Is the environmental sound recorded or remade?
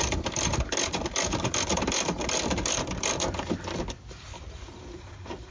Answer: remade